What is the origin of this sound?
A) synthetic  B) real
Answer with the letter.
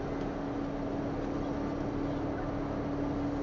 B